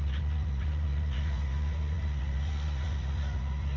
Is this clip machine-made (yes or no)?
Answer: yes